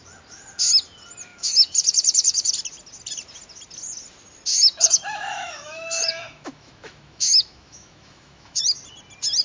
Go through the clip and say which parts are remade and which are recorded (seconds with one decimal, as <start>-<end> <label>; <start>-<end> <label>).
0.0-1.3 recorded; 1.3-2.5 remade; 2.5-4.5 recorded; 4.5-8.6 remade; 8.6-9.4 recorded